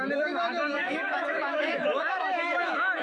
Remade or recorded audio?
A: remade